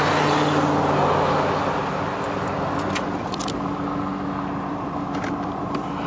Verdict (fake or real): real